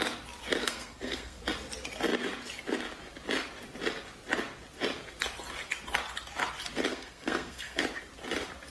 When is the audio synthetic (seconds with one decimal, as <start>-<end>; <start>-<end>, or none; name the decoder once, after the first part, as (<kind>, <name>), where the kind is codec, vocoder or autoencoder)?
0.6-1.4 (codec, SNAC); 6.9-7.8